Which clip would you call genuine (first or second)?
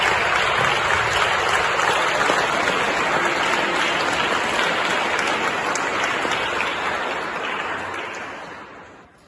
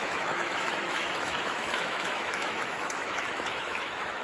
first